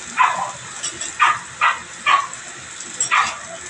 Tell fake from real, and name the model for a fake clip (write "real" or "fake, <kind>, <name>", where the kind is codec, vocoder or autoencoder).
real